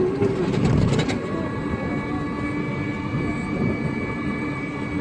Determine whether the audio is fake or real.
real